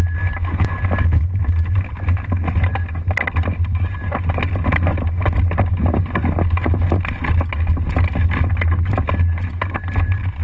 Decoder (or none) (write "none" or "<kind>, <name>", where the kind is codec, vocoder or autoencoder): none